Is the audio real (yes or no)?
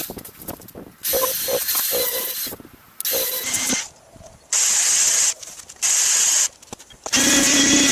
yes